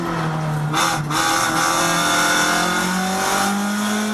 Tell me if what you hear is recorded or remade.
recorded